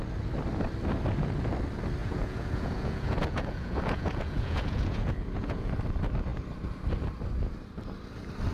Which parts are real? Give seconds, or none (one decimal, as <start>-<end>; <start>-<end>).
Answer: 0.0-2.0; 5.7-8.5